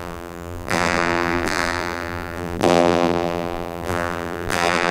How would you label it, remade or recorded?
remade